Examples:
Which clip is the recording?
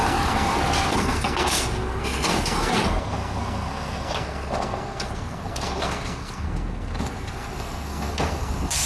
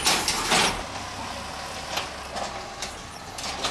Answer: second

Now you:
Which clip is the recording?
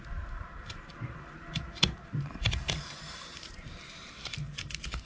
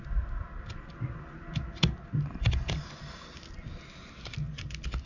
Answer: second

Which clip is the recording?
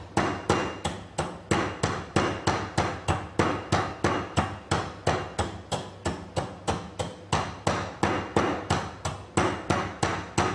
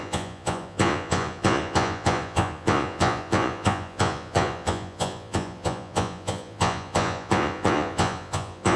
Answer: first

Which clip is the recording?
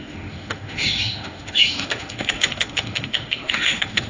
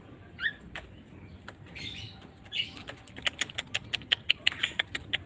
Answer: second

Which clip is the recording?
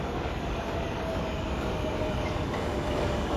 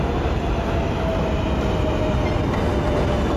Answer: second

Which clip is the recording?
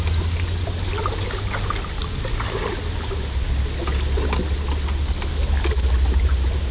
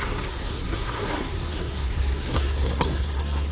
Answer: first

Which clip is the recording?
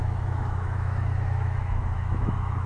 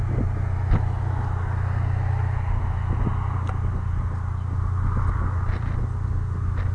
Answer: second